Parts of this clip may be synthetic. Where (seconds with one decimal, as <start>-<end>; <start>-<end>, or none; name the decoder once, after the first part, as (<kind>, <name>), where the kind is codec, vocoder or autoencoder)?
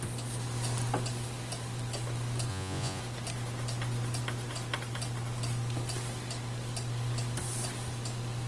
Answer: 2.5-3.0 (vocoder, Vocos)